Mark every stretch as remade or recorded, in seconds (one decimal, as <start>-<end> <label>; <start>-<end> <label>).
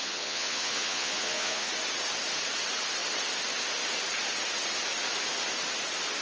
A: 0.0-1.7 remade; 1.7-6.2 recorded